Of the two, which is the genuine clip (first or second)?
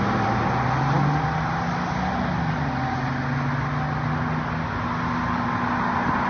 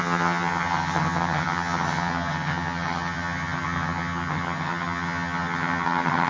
first